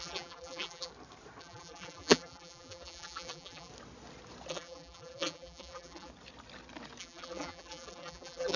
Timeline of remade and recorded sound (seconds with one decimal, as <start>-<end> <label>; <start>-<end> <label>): 0.0-0.9 remade; 0.9-1.4 recorded; 1.4-3.7 remade; 3.7-4.5 recorded; 4.5-6.1 remade; 6.1-7.0 recorded; 7.0-8.6 remade